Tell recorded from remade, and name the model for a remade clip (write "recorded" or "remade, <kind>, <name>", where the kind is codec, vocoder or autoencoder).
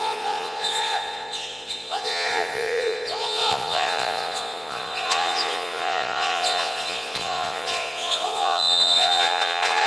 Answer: remade, vocoder, Vocos